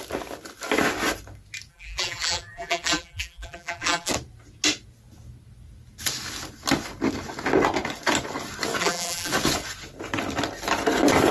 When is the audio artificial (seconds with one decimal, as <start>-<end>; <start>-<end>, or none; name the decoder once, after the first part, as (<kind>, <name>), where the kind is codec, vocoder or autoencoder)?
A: 1.7-4.1 (vocoder, BigVGAN v2); 8.8-9.3